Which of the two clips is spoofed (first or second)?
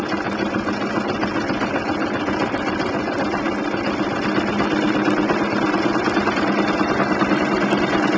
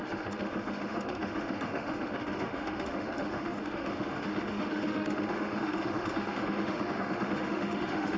second